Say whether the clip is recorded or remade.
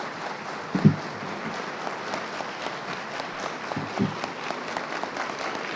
recorded